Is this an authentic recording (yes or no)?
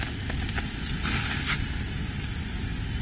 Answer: yes